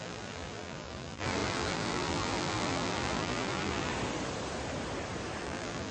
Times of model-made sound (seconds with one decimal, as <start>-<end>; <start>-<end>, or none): 0.0-3.9; 5.4-5.9